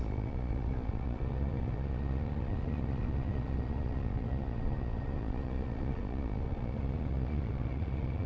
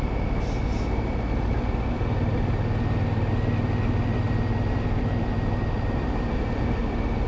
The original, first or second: second